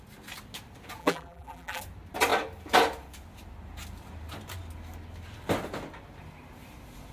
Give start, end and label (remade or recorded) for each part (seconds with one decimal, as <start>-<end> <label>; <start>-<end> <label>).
0.0-1.0 recorded; 1.0-1.8 remade; 1.8-7.1 recorded